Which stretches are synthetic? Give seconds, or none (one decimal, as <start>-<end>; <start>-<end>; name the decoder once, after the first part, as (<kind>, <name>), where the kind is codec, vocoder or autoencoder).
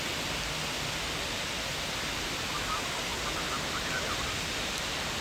none